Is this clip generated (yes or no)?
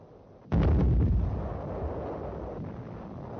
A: no